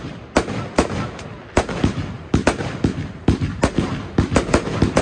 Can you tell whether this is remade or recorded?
recorded